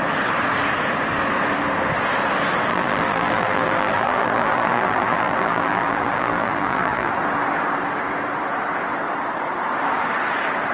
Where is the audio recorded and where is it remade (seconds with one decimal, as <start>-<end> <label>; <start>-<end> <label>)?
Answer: 0.0-2.7 recorded; 2.7-7.1 remade; 7.1-10.7 recorded